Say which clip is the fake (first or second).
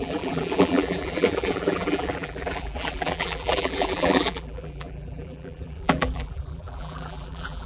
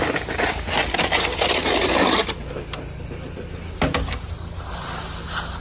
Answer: first